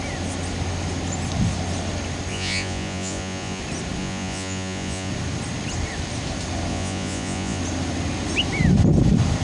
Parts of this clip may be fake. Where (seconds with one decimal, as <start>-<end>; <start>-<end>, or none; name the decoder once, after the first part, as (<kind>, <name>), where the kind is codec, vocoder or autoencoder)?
2.3-3.6 (vocoder, Vocos); 4.0-5.1; 6.7-7.6